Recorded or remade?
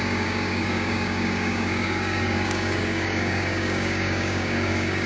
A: remade